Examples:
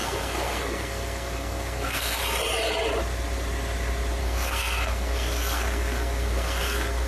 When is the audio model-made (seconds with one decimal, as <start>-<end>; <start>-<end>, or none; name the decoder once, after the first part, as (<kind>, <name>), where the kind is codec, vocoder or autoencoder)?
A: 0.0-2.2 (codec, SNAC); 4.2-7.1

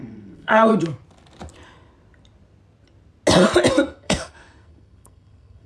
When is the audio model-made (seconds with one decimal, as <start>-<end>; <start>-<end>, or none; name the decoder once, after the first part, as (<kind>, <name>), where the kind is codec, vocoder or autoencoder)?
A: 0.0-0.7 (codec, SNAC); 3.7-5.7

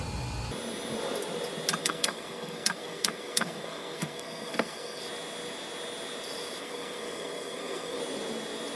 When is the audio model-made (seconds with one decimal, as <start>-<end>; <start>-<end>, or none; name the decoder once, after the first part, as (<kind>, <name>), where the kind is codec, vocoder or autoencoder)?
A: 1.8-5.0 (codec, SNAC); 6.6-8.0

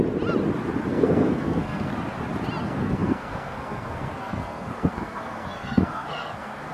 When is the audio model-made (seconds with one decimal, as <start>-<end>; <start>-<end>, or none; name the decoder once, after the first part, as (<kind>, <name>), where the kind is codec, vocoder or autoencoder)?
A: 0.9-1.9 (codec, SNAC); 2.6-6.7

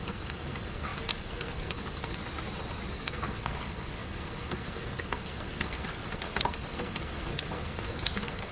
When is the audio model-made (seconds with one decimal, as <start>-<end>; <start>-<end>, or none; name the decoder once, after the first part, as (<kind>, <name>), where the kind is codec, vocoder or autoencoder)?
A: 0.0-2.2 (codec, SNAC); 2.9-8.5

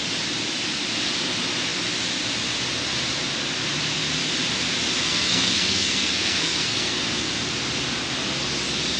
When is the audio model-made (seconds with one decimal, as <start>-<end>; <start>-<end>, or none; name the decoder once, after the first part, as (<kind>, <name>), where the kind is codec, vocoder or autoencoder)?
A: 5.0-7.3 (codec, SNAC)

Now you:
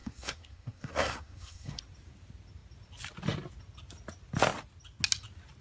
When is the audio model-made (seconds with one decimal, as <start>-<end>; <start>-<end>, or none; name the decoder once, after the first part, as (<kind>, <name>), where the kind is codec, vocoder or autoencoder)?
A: 0.0-1.8 (codec, SNAC)

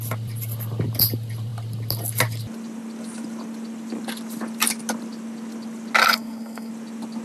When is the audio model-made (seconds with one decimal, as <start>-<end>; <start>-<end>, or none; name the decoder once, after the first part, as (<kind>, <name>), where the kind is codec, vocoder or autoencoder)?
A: 6.0-6.7 (codec, SNAC)